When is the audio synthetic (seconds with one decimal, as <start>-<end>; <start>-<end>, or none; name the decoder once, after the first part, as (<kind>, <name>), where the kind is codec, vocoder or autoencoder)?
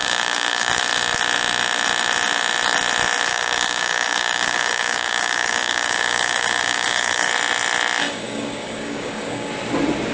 0.0-0.8 (codec, DAC); 3.3-7.3; 8.0-9.5